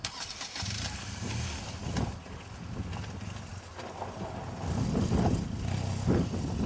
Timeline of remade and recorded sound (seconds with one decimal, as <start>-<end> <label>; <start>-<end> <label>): 0.0-1.6 remade; 1.6-6.7 recorded